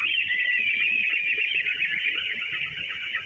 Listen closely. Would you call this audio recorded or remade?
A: remade